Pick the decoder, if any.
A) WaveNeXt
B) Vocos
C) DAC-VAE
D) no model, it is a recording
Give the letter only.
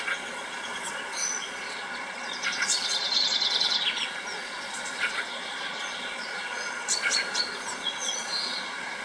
B